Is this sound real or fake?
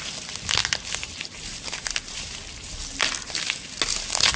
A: real